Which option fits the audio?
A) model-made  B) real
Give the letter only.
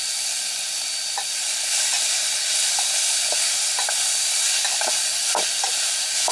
B